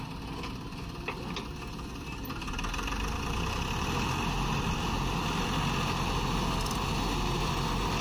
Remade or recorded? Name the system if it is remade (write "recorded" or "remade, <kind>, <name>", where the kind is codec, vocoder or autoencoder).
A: recorded